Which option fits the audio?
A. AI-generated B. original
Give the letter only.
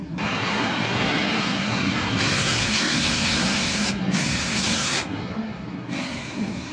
A